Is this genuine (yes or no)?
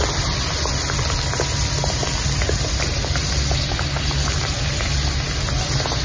yes